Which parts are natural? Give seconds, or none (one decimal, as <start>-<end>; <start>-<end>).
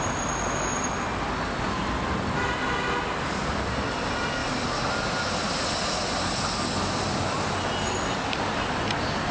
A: 0.0-9.3